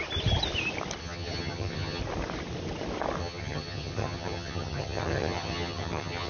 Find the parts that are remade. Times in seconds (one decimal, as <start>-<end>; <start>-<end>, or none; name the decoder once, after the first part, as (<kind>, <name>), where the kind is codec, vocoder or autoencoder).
1.0-2.0 (vocoder, HiFi-GAN); 3.2-6.3